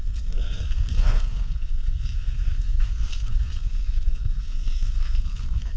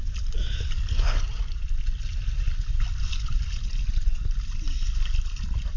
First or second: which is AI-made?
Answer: first